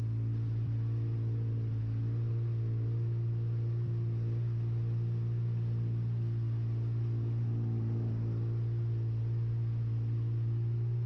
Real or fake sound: real